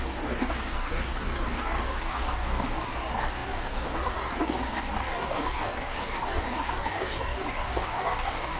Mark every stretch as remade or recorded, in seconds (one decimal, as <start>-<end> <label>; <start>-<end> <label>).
0.0-8.6 remade